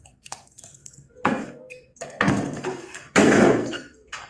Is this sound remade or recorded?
remade